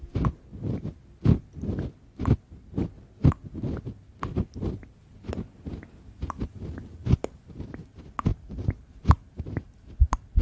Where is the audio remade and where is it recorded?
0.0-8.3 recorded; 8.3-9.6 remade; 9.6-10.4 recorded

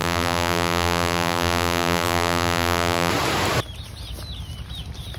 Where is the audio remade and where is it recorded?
0.0-3.1 remade; 3.1-5.2 recorded